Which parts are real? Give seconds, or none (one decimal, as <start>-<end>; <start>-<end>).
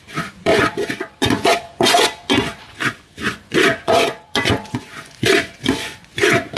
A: none